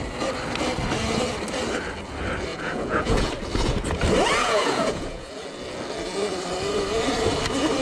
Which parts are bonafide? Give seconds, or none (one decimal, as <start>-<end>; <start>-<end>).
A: 0.0-2.5; 3.3-4.4; 5.3-7.8